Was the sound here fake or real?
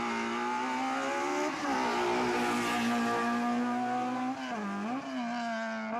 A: real